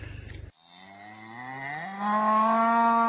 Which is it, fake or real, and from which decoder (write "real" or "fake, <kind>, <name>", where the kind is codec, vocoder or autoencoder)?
real